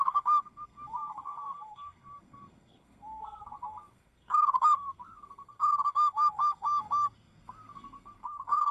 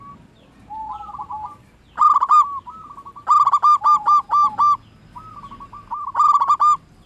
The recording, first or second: second